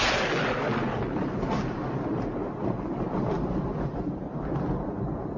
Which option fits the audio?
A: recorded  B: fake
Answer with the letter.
A